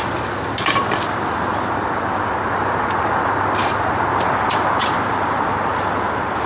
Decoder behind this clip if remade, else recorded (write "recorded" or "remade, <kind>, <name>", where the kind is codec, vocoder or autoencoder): recorded